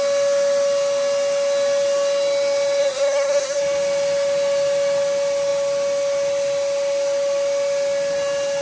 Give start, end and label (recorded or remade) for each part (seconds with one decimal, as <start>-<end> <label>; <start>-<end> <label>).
0.0-2.8 recorded; 2.8-3.6 remade; 3.6-8.6 recorded